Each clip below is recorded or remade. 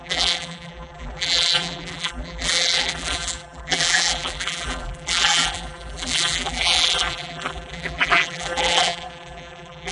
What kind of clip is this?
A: remade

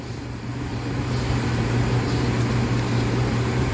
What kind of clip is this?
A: remade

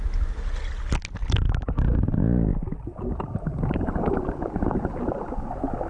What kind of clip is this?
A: recorded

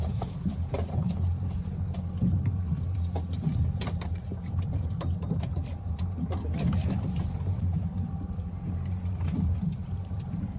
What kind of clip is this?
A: remade